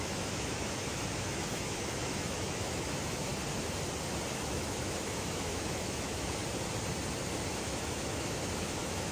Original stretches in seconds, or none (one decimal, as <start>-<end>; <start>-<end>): 3.3-4.3; 6.4-7.6